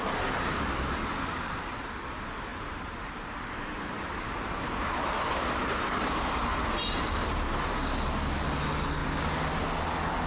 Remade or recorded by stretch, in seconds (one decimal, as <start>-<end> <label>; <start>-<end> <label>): 0.0-2.5 recorded; 2.5-7.6 remade; 7.6-10.3 recorded